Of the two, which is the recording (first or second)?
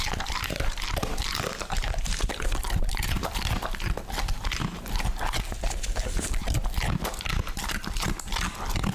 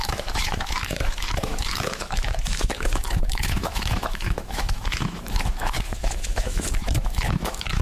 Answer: first